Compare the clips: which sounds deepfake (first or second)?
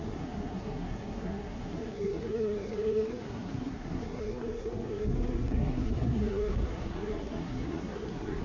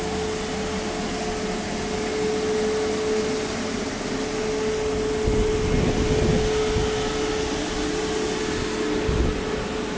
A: first